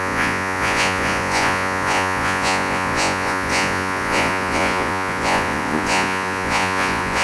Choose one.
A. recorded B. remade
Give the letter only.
B